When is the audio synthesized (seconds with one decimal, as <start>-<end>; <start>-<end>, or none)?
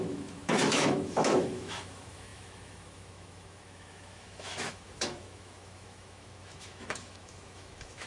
0.0-8.1